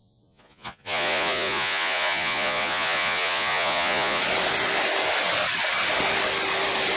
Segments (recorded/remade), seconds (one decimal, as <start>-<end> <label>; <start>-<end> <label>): 0.0-4.2 remade; 4.2-7.0 recorded

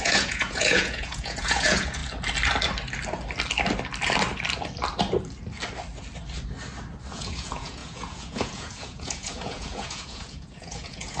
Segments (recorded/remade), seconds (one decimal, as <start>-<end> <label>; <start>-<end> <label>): 0.0-2.0 remade; 2.0-7.1 recorded; 7.1-11.2 remade

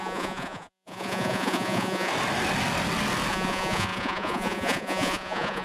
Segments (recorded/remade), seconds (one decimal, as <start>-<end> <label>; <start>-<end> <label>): 0.0-2.1 remade; 2.1-3.3 recorded; 3.3-5.6 remade

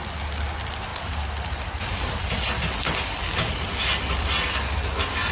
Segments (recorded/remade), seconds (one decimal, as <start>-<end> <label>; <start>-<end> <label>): 0.0-5.3 recorded